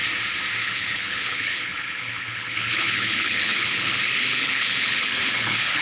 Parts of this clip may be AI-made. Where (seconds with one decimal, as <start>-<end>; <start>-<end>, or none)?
0.6-5.8